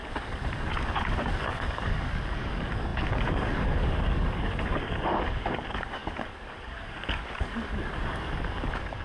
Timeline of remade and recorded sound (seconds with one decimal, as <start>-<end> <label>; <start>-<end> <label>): 0.0-9.0 remade